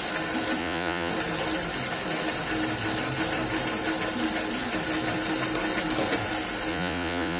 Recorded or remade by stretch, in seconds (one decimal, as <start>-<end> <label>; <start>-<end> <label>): 0.0-0.6 recorded; 0.6-1.1 remade; 1.1-6.7 recorded; 6.7-7.4 remade